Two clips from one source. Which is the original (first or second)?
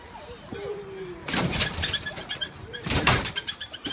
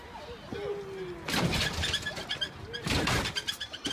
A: second